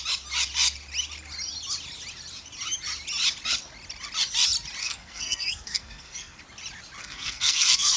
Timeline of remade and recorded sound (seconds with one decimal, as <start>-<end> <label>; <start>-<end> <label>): 0.0-4.8 recorded; 4.8-6.4 remade; 6.4-7.0 recorded; 7.0-8.0 remade